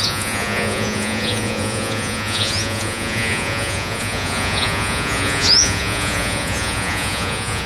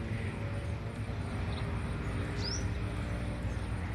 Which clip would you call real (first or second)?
second